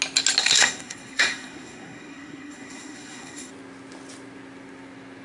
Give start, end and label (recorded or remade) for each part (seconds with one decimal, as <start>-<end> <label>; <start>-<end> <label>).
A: 0.0-0.4 recorded; 0.4-3.5 remade; 3.5-5.2 recorded